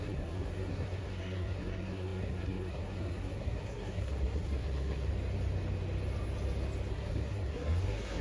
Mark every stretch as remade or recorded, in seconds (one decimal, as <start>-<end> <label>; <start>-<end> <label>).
0.0-5.1 remade; 5.1-6.9 recorded; 6.9-8.2 remade